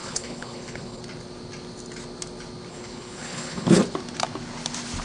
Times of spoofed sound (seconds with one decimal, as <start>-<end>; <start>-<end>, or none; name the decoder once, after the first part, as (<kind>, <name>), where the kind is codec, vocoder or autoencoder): 0.0-1.0 (codec, HILCodec); 2.7-3.8